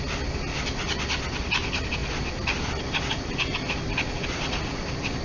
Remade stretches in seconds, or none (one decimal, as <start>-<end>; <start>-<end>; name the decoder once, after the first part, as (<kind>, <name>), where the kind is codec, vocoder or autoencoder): none